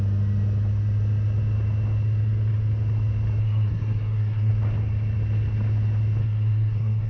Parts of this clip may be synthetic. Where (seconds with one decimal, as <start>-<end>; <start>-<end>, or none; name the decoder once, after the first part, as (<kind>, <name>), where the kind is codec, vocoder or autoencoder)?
3.4-4.5 (codec, SNAC); 6.2-7.1